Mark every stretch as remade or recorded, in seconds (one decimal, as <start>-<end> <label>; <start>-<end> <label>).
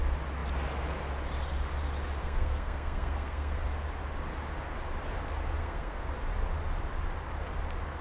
0.0-2.2 recorded; 2.2-3.6 remade; 3.6-5.6 recorded; 5.6-6.1 remade; 6.1-8.0 recorded